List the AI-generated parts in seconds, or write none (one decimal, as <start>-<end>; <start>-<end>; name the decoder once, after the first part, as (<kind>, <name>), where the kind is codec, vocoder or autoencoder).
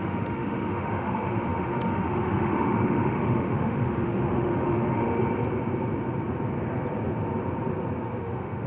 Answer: 0.0-5.2 (autoencoder, DAC-VAE); 8.2-8.7